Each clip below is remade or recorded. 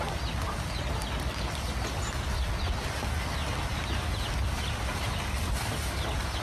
recorded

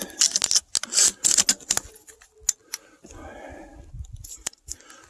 recorded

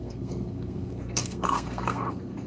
remade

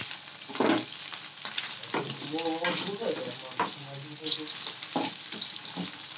recorded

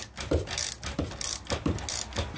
recorded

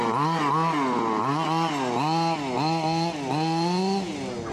recorded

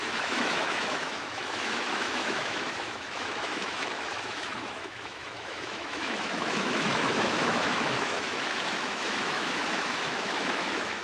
remade